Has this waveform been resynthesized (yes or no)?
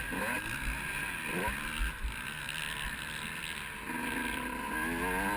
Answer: no